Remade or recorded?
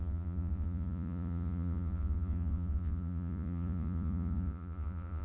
remade